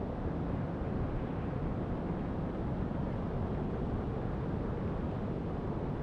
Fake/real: real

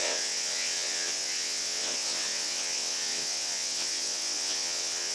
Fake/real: fake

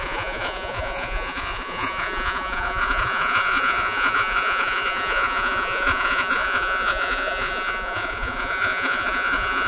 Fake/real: fake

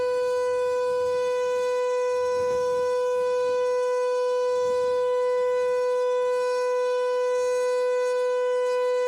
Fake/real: fake